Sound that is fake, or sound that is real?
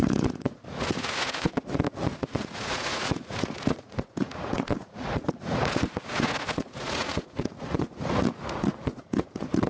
fake